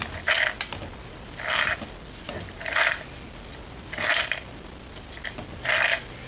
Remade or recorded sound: recorded